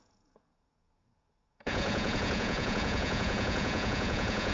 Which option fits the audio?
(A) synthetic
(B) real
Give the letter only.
A